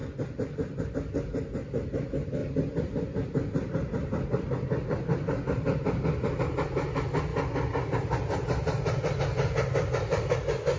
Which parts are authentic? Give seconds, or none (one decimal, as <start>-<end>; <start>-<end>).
0.0-10.8